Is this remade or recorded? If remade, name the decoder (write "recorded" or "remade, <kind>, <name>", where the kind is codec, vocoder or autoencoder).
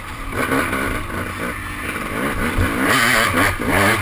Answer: recorded